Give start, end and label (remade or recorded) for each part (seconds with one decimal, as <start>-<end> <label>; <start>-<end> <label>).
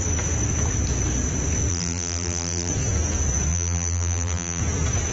0.0-1.7 recorded; 1.7-2.7 remade; 2.7-3.5 recorded; 3.5-4.6 remade; 4.6-5.1 recorded